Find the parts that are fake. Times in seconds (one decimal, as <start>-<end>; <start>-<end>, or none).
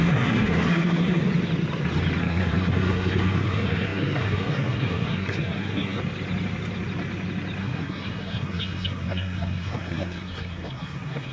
0.0-1.2; 2.2-6.0; 7.6-11.3